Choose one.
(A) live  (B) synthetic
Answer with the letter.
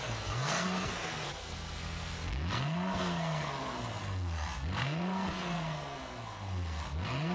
B